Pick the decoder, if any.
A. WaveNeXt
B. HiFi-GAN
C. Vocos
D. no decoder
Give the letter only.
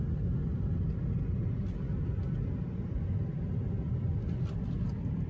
D